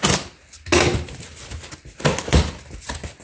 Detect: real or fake real